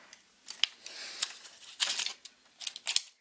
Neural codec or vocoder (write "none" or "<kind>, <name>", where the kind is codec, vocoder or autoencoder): none